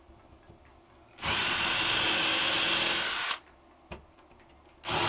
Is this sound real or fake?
real